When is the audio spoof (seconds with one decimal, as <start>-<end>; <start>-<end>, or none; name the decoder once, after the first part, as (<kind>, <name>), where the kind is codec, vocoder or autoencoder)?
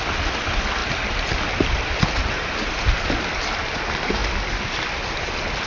none